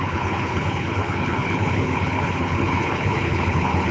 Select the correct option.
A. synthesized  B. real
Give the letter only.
A